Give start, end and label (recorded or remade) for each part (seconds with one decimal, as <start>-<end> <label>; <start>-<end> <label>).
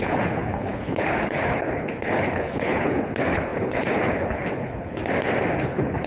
0.0-5.0 remade; 5.0-5.6 recorded; 5.6-6.1 remade